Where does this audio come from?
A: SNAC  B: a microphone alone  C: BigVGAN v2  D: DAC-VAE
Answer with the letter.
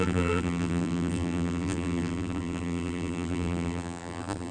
C